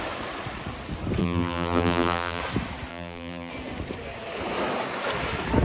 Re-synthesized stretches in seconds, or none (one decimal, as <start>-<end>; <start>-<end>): 1.2-2.4; 2.9-3.5